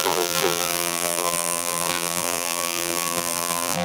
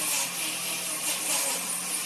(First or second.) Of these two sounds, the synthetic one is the first